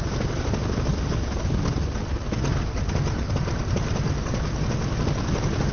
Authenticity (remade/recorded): recorded